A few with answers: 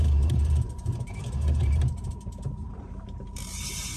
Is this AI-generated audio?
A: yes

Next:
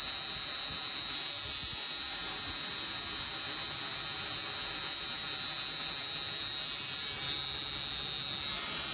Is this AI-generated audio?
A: no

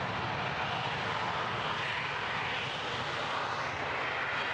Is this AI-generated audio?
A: no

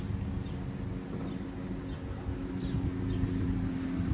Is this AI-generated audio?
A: no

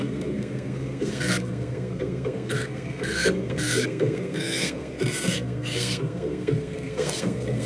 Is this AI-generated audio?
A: yes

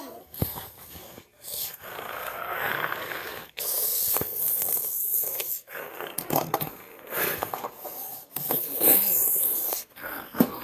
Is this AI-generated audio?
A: yes